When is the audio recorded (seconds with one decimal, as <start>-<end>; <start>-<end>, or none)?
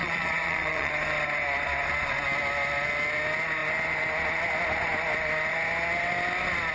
0.9-6.7